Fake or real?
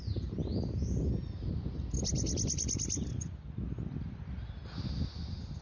real